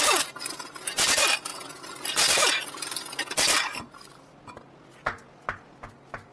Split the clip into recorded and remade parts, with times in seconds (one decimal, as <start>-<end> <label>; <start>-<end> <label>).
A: 0.0-6.3 recorded